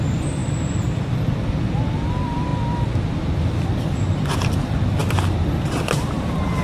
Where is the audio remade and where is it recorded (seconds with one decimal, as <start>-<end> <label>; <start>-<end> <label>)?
0.0-0.4 recorded; 0.4-1.2 remade; 1.2-6.6 recorded